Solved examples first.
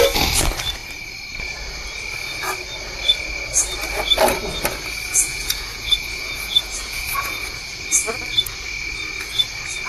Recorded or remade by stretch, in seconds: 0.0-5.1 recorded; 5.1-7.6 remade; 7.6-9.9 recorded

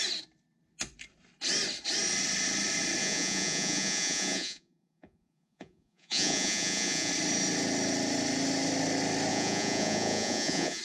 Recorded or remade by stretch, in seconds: 0.0-3.0 recorded; 3.0-7.1 remade; 7.1-9.3 recorded; 9.3-10.8 remade

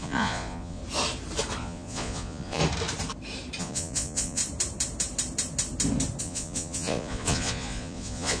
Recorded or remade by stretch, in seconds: 0.0-0.8 remade; 0.8-1.6 recorded; 1.6-2.6 remade; 2.6-3.6 recorded; 3.6-4.4 remade; 4.4-6.2 recorded; 6.2-8.4 remade

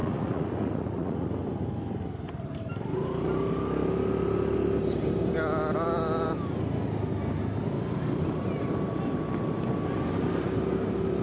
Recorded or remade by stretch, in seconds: 0.0-1.3 remade; 1.3-11.2 recorded

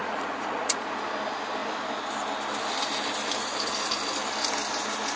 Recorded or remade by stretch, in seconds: 0.0-1.0 remade; 1.0-5.2 recorded

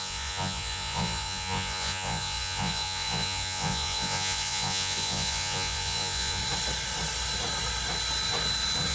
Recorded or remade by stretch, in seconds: 0.0-6.4 remade; 6.4-8.9 recorded